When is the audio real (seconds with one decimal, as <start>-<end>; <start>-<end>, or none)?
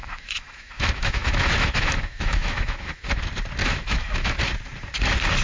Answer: 3.2-3.6; 4.4-5.4